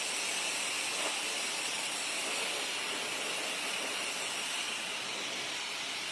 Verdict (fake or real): real